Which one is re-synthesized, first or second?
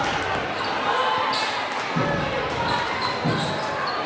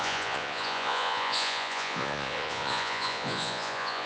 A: second